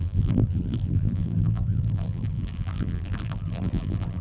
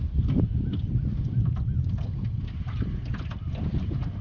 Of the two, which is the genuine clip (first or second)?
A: second